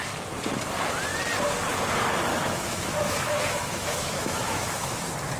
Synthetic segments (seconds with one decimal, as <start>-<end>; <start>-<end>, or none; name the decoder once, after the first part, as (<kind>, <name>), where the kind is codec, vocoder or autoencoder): 2.3-5.0 (autoencoder, DAC-VAE)